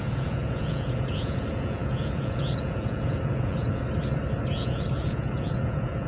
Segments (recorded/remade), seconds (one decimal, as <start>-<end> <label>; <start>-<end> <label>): 0.0-3.8 remade; 3.8-4.5 recorded; 4.5-6.1 remade